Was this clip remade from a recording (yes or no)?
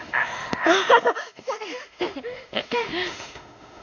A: yes